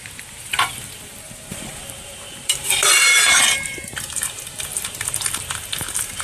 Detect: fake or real fake